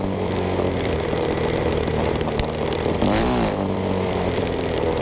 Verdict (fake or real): fake